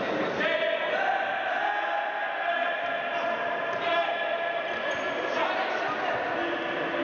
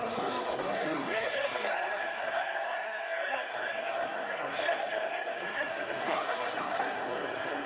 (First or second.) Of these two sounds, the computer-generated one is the second